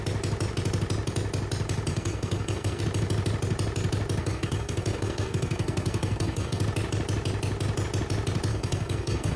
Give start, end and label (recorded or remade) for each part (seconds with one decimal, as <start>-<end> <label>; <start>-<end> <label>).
0.0-1.9 recorded; 1.9-2.8 remade; 2.8-4.2 recorded; 4.2-6.6 remade; 6.6-8.5 recorded; 8.5-9.4 remade